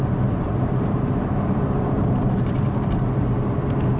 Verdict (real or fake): fake